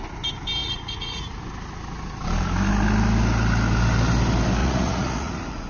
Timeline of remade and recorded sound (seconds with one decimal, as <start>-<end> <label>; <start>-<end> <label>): 0.0-0.6 recorded; 0.6-1.4 remade; 1.4-4.6 recorded; 4.6-5.7 remade